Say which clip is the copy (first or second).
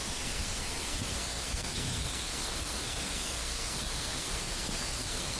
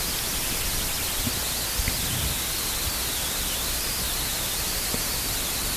first